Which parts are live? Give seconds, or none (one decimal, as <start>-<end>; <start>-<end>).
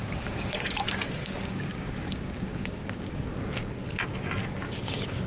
3.2-4.4